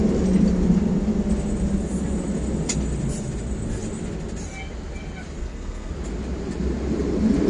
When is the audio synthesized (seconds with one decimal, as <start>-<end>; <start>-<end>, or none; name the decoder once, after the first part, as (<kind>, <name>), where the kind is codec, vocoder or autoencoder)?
5.4-5.9 (codec, SNAC)